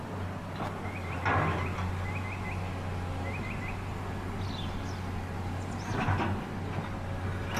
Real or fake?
real